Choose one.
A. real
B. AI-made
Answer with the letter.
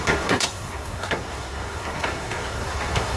B